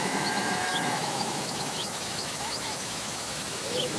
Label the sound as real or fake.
fake